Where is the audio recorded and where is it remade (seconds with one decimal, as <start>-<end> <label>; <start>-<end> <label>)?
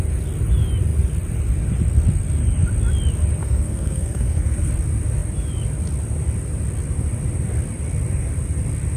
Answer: 0.0-3.4 recorded; 3.4-4.7 remade; 4.7-9.0 recorded